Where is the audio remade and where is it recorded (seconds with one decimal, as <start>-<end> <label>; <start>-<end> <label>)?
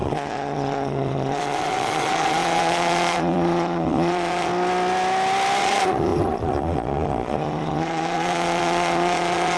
0.0-4.5 remade; 4.5-5.6 recorded; 5.6-9.6 remade